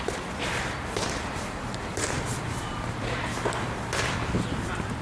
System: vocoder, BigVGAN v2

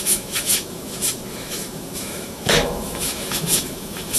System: autoencoder, DAC-VAE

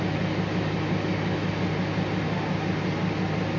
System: none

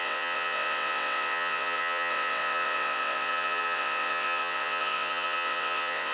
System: vocoder, WaveNeXt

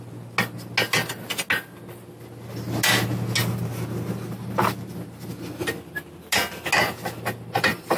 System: none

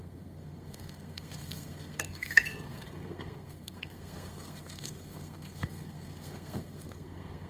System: codec, SNAC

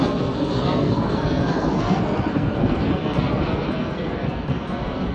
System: codec, SNAC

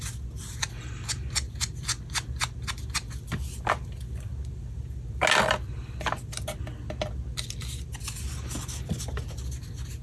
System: none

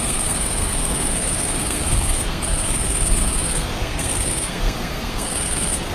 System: codec, SNAC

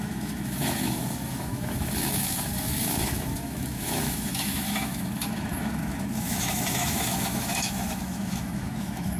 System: autoencoder, DAC-VAE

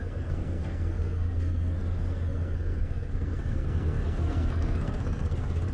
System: codec, SNAC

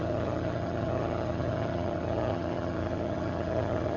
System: vocoder, HiFi-GAN